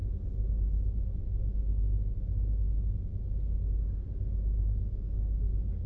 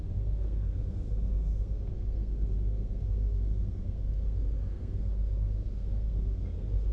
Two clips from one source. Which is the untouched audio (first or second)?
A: first